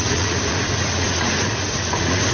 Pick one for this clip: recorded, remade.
remade